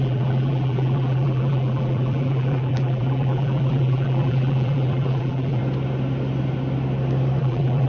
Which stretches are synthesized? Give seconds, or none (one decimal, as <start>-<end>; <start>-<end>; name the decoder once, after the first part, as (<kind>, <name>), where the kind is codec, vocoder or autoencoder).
0.0-5.6 (vocoder, BigVGAN v2); 7.4-7.9